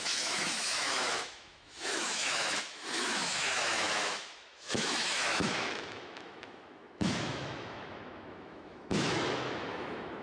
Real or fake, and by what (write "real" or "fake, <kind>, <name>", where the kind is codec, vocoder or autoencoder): fake, autoencoder, DAC-VAE